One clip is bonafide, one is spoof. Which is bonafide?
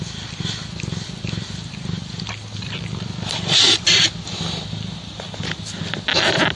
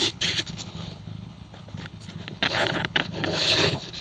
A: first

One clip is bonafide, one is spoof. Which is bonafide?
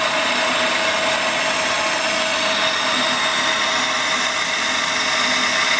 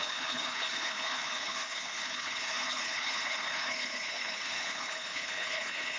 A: first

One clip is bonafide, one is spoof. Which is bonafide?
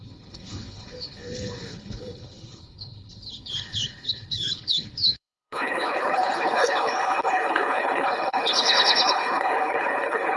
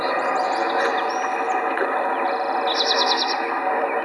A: second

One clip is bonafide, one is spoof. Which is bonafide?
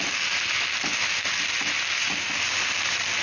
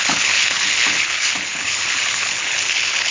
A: first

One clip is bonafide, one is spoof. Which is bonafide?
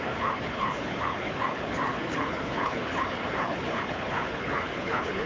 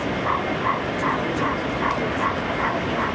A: second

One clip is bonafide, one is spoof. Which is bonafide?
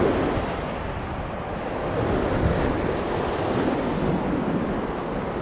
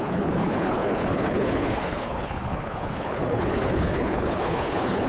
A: first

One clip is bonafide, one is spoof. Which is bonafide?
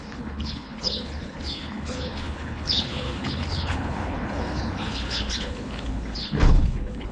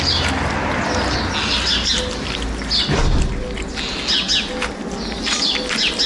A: second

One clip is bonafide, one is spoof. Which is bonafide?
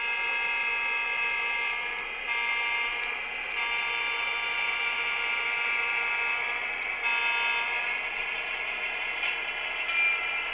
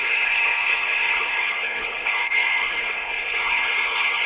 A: first